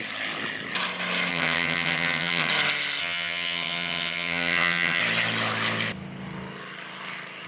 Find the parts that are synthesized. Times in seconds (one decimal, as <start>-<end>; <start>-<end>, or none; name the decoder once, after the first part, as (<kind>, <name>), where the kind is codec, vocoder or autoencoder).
1.3-2.5 (vocoder, HiFi-GAN); 3.0-5.0